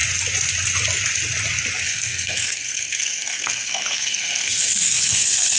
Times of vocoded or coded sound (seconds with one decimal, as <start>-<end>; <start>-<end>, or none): 1.8-5.6